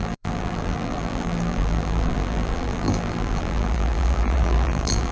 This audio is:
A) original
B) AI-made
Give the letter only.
B